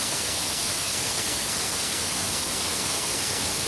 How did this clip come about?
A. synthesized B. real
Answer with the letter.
A